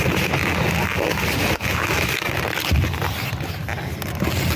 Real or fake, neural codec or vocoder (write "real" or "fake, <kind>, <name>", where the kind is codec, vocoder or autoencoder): real